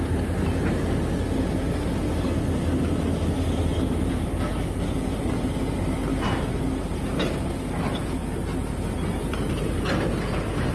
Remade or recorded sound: recorded